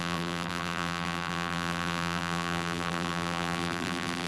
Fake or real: fake